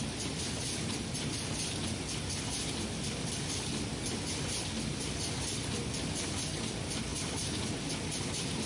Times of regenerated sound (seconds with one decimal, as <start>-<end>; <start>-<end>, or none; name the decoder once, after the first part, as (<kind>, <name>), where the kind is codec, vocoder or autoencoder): none